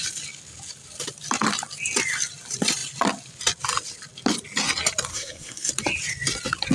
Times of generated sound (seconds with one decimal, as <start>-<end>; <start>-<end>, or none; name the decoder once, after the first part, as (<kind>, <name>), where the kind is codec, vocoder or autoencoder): 5.1-5.7 (codec, SNAC)